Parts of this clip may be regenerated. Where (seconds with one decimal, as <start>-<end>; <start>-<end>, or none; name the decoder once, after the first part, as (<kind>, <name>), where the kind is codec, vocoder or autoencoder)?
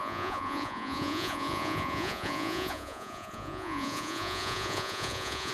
0.0-5.5 (vocoder, Vocos)